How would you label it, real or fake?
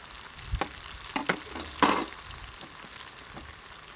real